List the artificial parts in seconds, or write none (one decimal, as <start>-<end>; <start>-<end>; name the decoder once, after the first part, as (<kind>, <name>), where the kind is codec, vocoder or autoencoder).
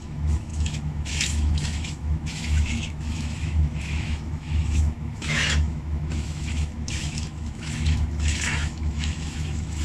0.0-9.8 (autoencoder, DAC-VAE)